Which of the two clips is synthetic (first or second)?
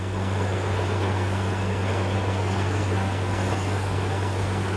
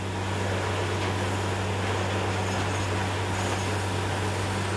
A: first